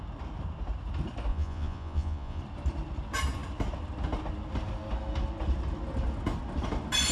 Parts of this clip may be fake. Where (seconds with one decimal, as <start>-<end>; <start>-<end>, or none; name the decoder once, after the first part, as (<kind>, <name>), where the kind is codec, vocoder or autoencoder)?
1.3-2.4 (vocoder, Vocos)